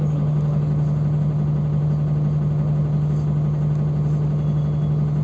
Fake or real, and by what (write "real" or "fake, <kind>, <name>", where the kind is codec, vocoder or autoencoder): real